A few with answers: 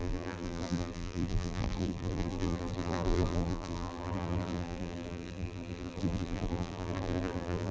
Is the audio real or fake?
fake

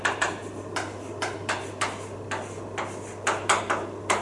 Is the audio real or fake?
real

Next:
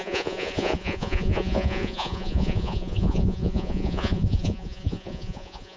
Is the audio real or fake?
fake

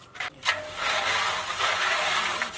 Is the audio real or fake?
real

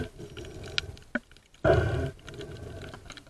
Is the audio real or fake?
real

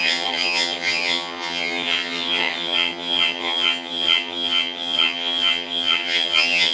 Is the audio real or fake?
fake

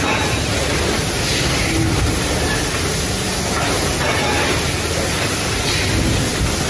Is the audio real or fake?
real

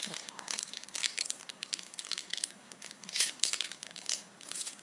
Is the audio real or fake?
fake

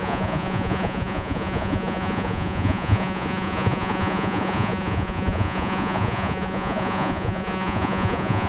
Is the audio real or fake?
fake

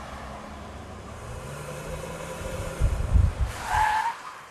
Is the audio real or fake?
fake